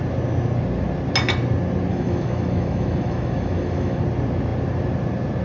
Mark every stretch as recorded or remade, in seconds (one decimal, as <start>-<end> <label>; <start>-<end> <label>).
0.0-1.9 recorded; 1.9-4.0 remade; 4.0-5.4 recorded